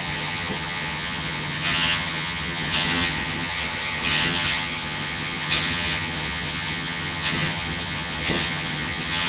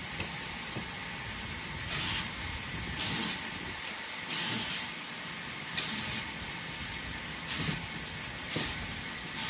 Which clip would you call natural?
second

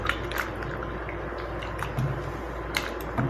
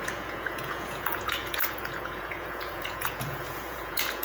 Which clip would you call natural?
first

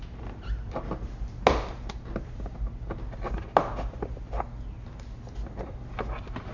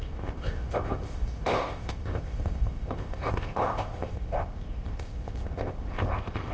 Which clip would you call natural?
first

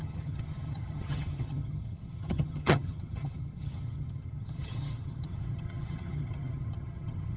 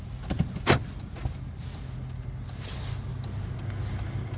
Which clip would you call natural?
second